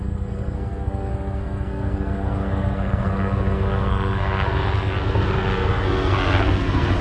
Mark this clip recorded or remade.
remade